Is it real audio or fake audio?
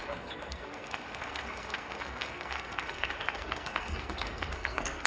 fake